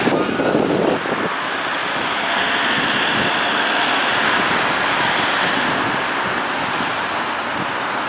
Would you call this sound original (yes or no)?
yes